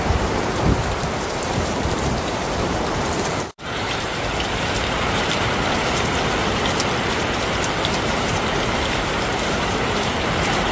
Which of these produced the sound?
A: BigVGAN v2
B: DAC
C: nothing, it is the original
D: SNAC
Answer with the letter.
A